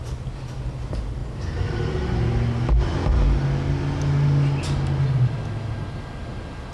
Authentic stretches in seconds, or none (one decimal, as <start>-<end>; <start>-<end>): 0.0-1.2; 2.1-6.7